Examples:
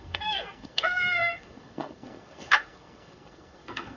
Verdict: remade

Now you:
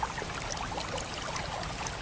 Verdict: recorded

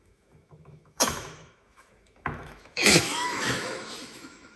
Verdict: remade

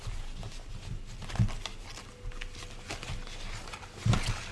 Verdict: recorded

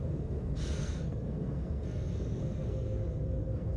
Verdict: remade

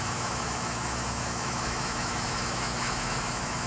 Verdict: remade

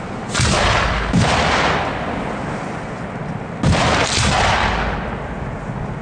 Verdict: recorded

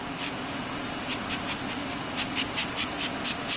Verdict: recorded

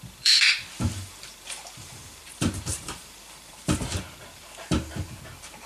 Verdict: remade